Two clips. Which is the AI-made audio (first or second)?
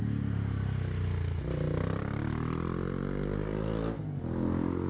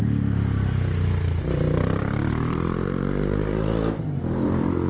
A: second